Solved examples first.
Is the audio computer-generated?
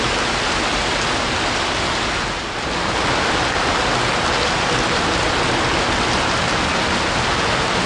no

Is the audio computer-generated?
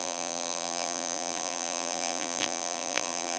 yes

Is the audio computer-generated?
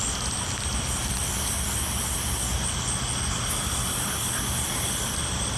no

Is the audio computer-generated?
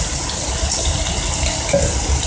no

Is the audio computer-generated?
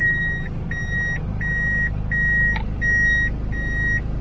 no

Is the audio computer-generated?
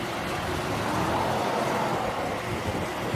no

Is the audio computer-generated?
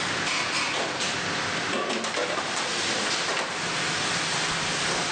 no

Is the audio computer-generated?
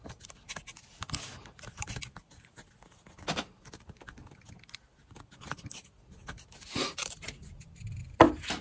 no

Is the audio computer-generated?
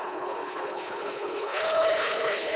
yes